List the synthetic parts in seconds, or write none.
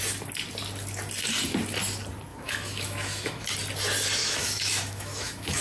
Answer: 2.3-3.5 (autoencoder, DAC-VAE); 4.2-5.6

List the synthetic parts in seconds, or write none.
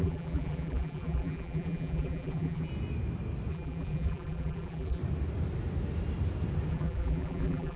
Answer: 0.0-2.7 (vocoder, BigVGAN v2); 3.5-5.0; 6.7-7.8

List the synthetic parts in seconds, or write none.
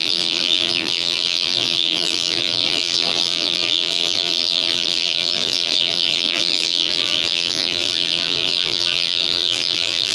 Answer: 0.0-10.1 (vocoder, BigVGAN v2)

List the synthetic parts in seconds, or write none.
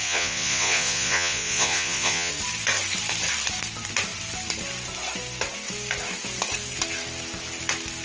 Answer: 0.0-2.3 (vocoder, Vocos)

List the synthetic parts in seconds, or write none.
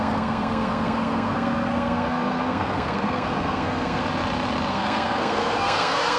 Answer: 0.0-4.0 (codec, SNAC); 4.7-6.2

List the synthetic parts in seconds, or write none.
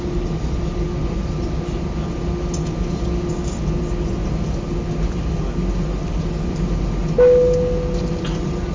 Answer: none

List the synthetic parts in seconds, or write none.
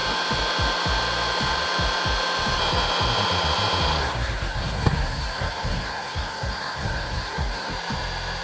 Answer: 4.0-7.7 (codec, SNAC)